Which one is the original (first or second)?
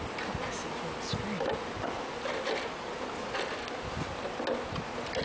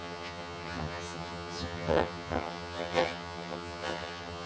first